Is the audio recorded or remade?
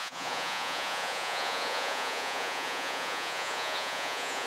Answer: remade